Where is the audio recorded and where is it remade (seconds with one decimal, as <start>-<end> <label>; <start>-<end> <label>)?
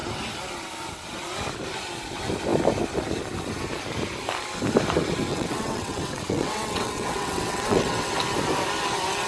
0.0-5.3 recorded; 5.3-8.1 remade; 8.1-9.3 recorded